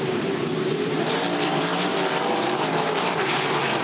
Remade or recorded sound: remade